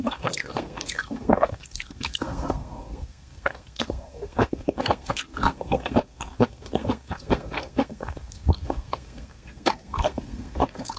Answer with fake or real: fake